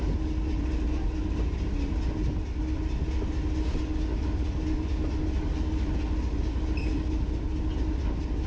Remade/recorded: recorded